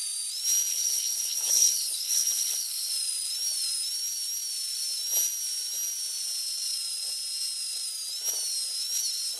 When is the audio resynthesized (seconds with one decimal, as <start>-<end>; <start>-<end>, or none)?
0.7-2.9